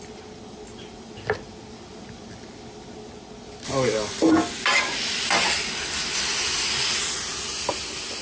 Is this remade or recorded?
recorded